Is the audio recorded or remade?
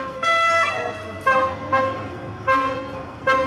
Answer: remade